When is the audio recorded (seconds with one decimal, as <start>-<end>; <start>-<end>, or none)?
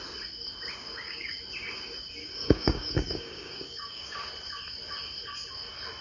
0.0-0.8; 1.4-2.2; 4.1-6.0